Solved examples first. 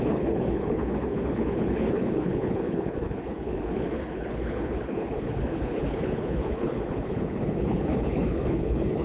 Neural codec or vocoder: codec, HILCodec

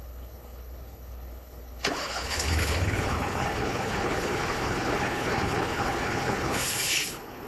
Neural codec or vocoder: codec, HILCodec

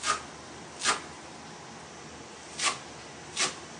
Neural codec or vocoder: none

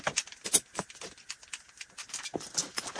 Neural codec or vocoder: none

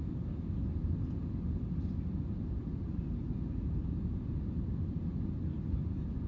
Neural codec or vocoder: none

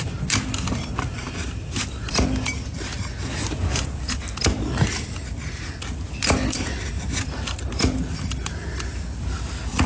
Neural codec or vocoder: none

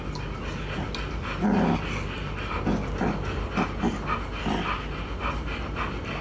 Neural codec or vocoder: none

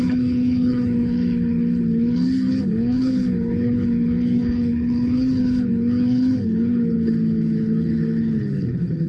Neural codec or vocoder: codec, HILCodec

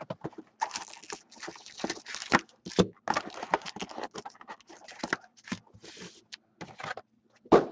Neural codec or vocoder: none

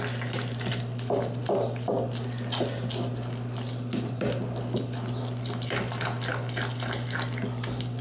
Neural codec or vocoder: none